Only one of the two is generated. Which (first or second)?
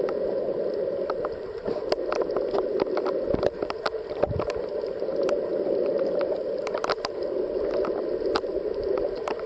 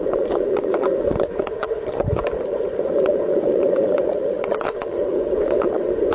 second